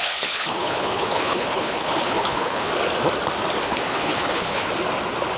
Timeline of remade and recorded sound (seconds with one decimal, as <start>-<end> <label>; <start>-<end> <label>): 0.0-2.7 remade; 2.7-3.6 recorded; 3.6-4.7 remade; 4.7-5.4 recorded